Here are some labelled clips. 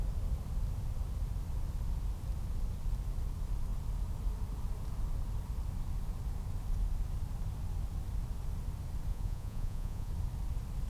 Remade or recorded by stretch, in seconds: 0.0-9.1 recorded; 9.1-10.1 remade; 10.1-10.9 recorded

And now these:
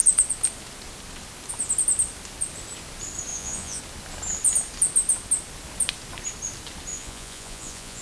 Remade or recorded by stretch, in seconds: 0.0-3.3 recorded; 3.3-3.8 remade; 3.8-6.9 recorded; 6.9-8.0 remade